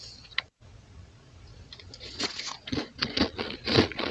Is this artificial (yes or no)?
yes